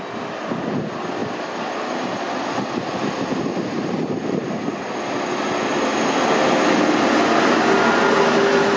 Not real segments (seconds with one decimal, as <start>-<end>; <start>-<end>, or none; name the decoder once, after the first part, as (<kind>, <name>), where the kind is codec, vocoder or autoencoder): none